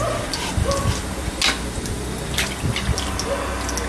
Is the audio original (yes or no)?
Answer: yes